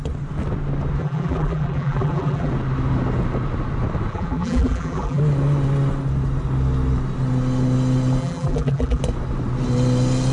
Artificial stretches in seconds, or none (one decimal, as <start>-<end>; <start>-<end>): 1.0-2.5; 4.1-5.2; 8.2-9.0